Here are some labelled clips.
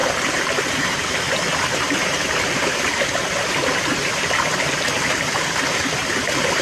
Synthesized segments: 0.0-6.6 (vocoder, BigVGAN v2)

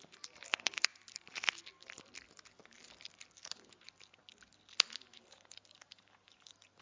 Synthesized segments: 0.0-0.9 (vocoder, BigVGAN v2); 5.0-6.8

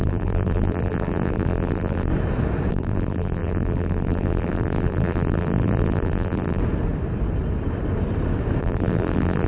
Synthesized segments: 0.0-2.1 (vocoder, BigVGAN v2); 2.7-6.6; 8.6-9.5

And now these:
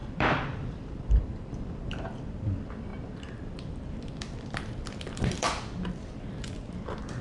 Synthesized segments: 0.0-7.2 (vocoder, BigVGAN v2)

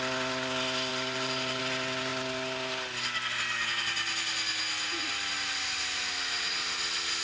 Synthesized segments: 0.9-1.6 (vocoder, BigVGAN v2)